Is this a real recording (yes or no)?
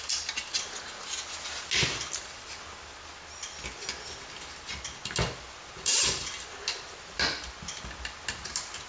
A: yes